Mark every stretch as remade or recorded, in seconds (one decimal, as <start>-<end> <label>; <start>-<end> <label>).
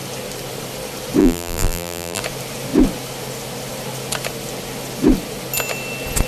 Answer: 0.0-1.2 recorded; 1.2-2.2 remade; 2.2-6.3 recorded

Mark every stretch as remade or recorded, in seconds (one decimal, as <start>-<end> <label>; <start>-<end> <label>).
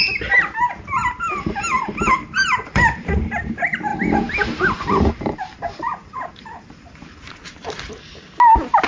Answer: 0.0-1.0 recorded; 1.0-3.2 remade; 3.2-3.9 recorded; 3.9-7.2 remade; 7.2-8.9 recorded